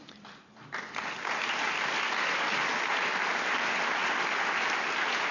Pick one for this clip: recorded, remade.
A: recorded